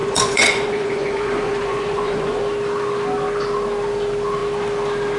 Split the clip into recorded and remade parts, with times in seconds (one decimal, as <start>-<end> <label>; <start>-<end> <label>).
0.0-2.4 remade; 2.4-5.2 recorded